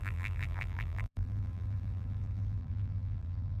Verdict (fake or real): fake